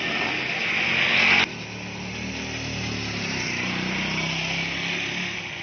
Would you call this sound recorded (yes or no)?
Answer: yes